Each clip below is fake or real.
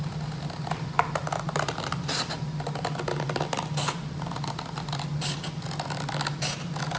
real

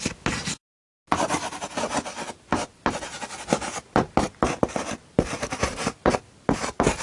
real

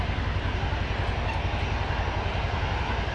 real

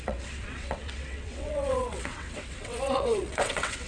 fake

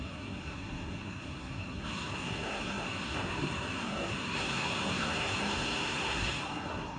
fake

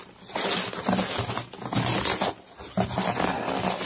real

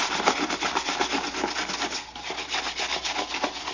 real